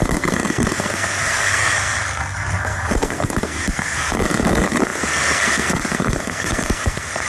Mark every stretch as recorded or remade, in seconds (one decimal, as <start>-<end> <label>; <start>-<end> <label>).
0.0-7.3 remade